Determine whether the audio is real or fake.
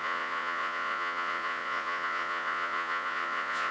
fake